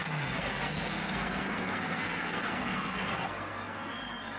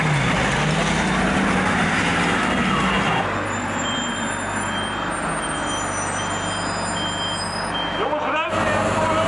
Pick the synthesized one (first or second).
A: first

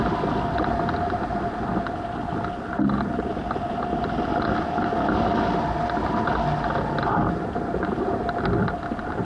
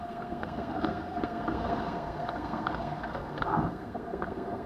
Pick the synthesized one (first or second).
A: second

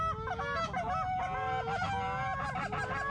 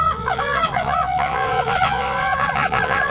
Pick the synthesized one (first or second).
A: second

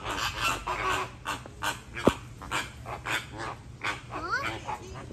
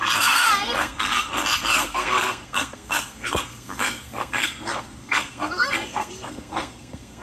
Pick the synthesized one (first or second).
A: second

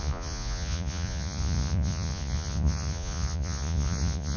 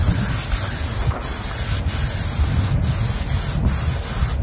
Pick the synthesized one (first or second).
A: first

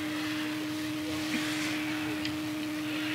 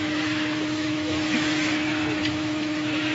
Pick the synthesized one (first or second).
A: second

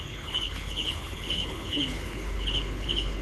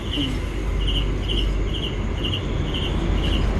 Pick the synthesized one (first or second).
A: first